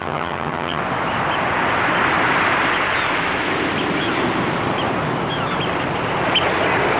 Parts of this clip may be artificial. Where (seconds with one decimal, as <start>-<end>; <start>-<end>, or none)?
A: 0.0-0.8